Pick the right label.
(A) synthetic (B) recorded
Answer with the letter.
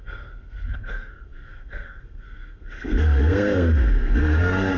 A